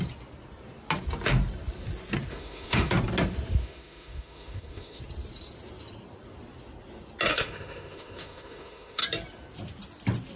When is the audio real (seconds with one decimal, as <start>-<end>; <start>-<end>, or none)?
0.0-2.3; 2.9-3.6; 5.0-7.3; 9.0-10.4

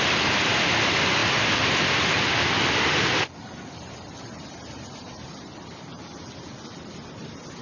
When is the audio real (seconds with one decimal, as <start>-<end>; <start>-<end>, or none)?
0.0-7.6